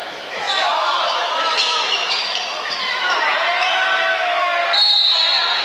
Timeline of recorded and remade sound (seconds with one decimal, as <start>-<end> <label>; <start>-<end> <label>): 0.0-4.6 remade; 4.6-5.6 recorded